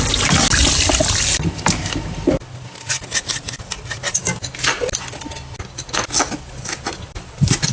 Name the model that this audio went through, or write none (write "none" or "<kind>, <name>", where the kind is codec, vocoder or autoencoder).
none